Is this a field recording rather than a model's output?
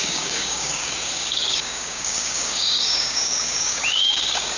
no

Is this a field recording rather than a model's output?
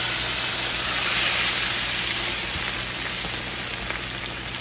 yes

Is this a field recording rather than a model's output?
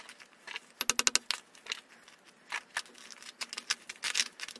yes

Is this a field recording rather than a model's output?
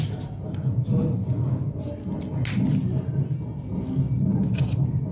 yes